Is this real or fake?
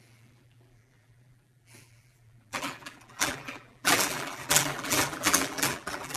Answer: fake